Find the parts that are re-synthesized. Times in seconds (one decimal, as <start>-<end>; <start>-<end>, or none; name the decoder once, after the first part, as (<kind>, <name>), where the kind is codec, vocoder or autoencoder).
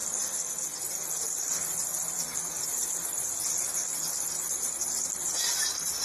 0.0-1.9 (vocoder, BigVGAN v2); 3.5-6.0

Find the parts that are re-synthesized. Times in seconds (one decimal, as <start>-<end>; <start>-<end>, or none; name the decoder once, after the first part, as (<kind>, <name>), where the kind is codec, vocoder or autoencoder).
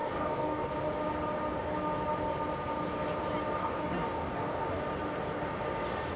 0.0-0.7 (codec, DAC); 3.6-4.8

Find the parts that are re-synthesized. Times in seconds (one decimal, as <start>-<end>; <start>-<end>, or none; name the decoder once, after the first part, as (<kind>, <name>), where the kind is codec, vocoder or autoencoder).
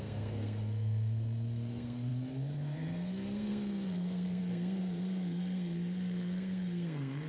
0.0-7.3 (codec, SNAC)